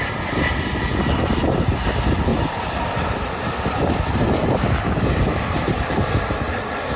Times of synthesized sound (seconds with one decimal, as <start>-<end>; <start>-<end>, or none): 2.3-5.9